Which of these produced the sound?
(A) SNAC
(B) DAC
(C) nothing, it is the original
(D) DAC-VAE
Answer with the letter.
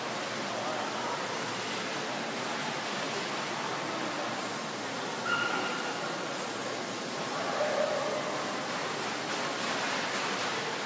C